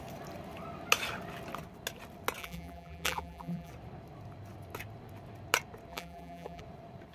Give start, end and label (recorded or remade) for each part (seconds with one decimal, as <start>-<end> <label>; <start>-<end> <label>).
0.0-2.4 recorded; 2.4-3.7 remade; 3.7-5.9 recorded; 5.9-6.6 remade; 6.6-7.1 recorded